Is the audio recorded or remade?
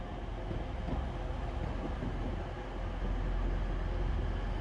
recorded